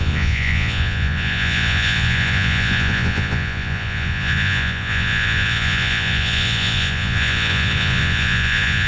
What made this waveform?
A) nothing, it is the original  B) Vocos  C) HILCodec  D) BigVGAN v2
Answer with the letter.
B